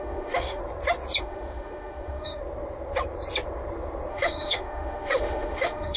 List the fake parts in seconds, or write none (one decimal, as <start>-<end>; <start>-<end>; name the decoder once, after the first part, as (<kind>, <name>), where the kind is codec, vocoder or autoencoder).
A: 0.0-0.6 (autoencoder, DAC-VAE); 1.2-2.4; 4.1-6.0